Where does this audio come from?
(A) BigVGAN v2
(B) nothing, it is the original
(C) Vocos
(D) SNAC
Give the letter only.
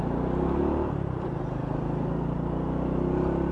B